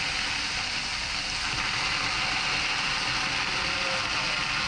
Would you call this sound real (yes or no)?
yes